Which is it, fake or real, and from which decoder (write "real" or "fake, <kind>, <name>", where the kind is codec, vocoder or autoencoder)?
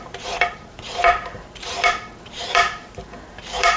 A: fake, vocoder, BigVGAN v2